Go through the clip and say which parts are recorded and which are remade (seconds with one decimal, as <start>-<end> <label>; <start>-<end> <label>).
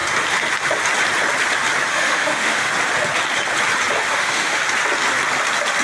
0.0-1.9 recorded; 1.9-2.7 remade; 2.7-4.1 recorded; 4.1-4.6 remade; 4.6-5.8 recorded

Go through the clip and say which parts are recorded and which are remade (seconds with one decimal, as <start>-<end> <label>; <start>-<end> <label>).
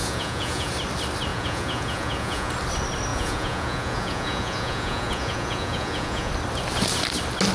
0.0-0.7 remade; 0.7-1.3 recorded; 1.3-2.5 remade; 2.5-3.1 recorded; 3.1-6.3 remade; 6.3-7.5 recorded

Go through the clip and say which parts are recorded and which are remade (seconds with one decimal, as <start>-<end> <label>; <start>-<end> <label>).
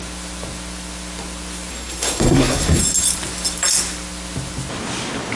0.0-1.7 recorded; 1.7-2.8 remade; 2.8-5.4 recorded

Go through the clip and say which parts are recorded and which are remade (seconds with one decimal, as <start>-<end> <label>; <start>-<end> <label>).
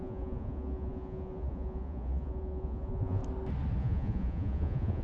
0.0-3.2 remade; 3.2-3.8 recorded; 3.8-5.0 remade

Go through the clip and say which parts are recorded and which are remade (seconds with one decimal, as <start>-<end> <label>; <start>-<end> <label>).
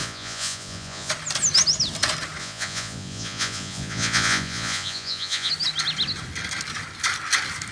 0.0-1.1 remade; 1.1-2.4 recorded; 2.4-5.5 remade; 5.5-7.7 recorded